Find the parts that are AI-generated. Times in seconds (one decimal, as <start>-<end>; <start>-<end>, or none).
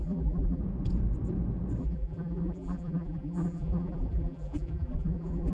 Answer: 0.0-0.6; 1.8-5.5